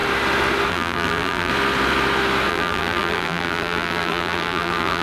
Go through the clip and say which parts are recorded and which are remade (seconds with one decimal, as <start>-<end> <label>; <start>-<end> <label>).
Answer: 0.0-0.7 recorded; 0.7-1.5 remade; 1.5-2.5 recorded; 2.5-5.0 remade